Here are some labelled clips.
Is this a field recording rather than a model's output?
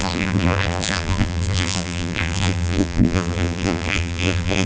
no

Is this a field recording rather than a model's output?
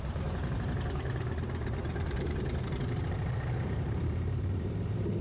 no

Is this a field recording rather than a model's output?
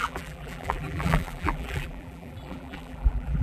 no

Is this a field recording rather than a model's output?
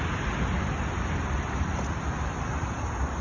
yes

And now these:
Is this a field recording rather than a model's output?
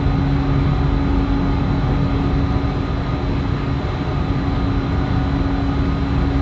yes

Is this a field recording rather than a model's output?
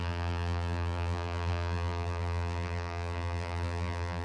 no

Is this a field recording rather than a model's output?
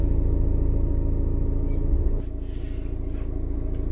yes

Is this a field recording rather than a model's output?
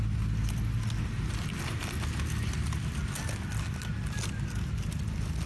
yes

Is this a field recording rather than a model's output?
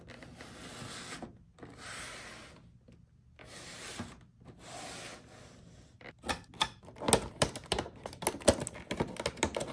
yes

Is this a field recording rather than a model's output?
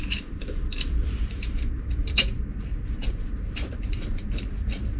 no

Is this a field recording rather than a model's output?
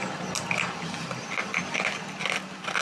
yes